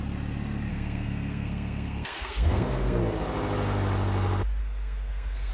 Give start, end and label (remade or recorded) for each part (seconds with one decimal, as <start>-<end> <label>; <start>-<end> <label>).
0.0-0.7 recorded; 0.7-3.0 remade; 3.0-4.6 recorded; 4.6-5.5 remade